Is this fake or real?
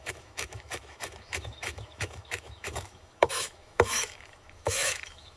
fake